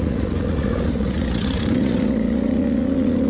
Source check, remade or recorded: remade